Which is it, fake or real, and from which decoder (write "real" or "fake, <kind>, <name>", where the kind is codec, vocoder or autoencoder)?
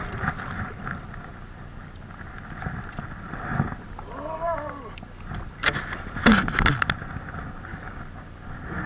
real